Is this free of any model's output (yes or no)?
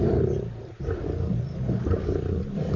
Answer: yes